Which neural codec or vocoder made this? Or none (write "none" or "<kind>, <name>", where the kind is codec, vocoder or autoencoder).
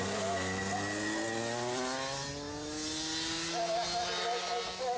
none